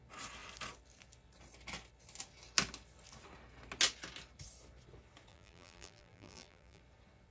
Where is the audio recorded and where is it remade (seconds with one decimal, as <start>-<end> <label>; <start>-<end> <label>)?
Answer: 0.0-5.3 recorded; 5.3-6.8 remade; 6.8-7.3 recorded